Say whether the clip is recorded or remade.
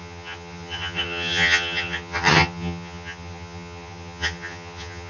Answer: remade